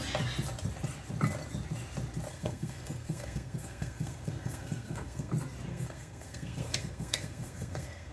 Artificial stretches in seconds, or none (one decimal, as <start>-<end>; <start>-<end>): 2.3-5.3; 5.7-8.1